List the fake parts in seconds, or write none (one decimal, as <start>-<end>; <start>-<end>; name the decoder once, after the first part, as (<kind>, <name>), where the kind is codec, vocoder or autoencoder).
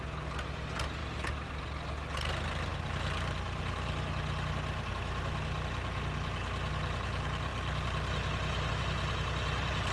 none